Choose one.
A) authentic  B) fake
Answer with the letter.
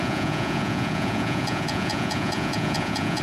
B